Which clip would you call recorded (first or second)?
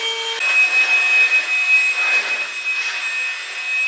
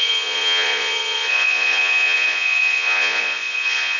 first